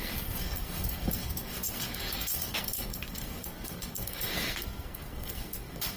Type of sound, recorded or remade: remade